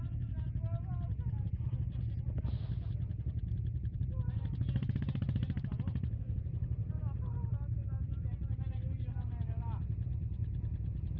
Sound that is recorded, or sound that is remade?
recorded